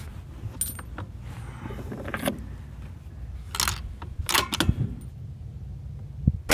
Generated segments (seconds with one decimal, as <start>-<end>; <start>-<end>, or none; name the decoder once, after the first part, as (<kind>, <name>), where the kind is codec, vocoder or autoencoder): none